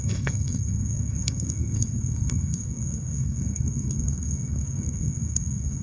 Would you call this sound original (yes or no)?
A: no